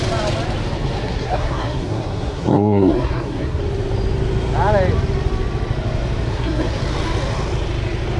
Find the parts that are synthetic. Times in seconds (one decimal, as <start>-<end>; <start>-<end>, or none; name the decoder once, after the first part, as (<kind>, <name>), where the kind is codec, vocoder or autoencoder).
1.0-3.6 (codec, SNAC); 6.3-6.8

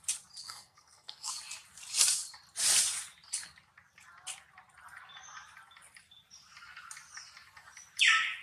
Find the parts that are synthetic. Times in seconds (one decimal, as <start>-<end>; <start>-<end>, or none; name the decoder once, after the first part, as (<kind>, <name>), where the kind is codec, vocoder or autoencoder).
0.4-1.3 (codec, SNAC)

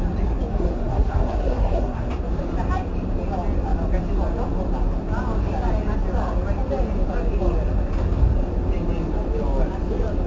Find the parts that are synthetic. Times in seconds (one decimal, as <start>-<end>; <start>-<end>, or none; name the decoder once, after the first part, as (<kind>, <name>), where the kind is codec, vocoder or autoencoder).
0.5-2.1 (codec, SNAC)

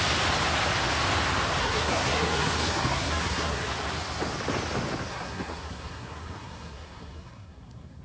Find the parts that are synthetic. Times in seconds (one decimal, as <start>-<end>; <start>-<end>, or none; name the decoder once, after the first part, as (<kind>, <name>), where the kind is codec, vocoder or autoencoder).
1.6-3.6 (codec, SNAC); 5.1-8.0

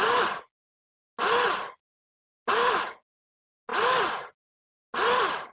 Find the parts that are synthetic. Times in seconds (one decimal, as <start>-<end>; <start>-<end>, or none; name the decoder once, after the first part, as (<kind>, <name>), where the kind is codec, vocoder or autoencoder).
none

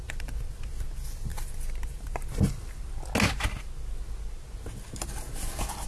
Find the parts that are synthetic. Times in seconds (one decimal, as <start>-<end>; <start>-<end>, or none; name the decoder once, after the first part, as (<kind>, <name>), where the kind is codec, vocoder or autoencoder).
none

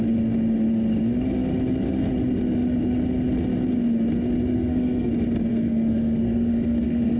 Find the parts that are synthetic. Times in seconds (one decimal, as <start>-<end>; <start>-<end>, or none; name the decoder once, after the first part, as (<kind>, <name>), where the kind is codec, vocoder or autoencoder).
4.5-5.1 (codec, SNAC); 5.5-7.2

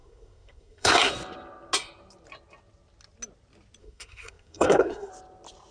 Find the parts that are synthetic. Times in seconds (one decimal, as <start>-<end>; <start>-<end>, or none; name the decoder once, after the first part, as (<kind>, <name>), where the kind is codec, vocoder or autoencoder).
0.0-1.1 (codec, SNAC); 3.8-5.1